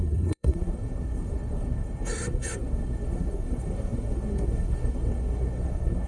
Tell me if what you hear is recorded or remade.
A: remade